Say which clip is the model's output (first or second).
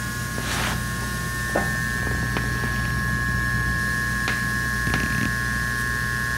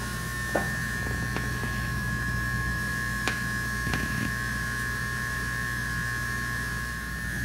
second